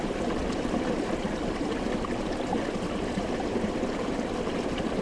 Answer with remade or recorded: recorded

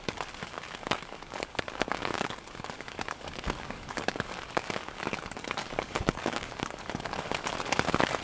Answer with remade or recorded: remade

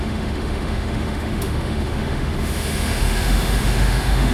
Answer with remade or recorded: remade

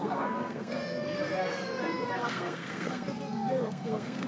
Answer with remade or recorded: remade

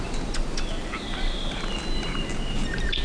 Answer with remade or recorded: recorded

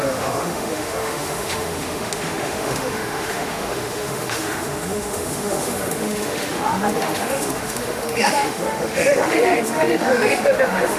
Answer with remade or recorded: remade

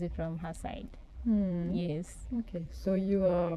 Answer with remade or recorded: remade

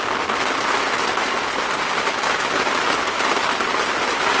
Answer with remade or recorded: recorded